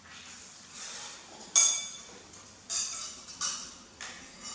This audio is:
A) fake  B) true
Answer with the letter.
B